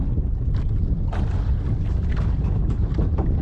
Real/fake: real